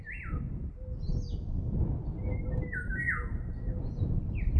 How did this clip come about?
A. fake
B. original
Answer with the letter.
B